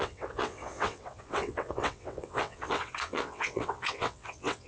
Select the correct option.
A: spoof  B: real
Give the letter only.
A